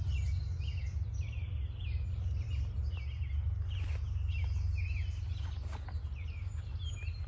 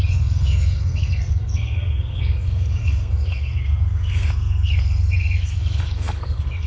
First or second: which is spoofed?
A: second